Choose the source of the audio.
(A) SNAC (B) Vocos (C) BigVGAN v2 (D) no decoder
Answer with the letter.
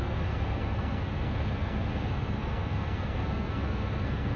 A